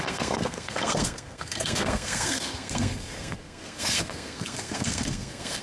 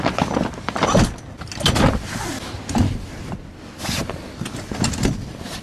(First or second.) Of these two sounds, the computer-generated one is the first